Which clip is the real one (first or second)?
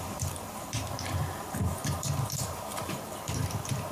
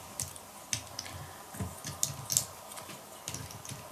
second